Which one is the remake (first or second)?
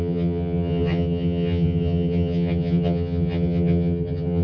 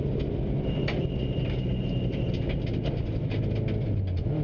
first